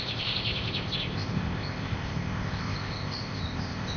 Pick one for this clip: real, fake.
fake